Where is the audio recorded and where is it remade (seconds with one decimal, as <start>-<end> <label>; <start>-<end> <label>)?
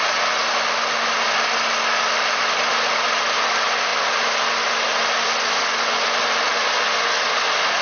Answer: 0.0-7.8 recorded